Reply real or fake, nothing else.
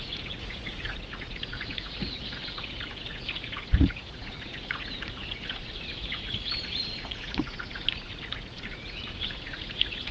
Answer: fake